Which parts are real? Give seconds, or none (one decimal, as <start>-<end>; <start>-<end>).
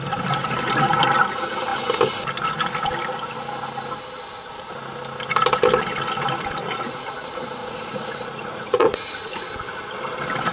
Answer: 0.0-6.6; 7.1-7.6; 9.4-10.5